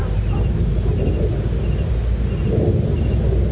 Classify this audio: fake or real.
real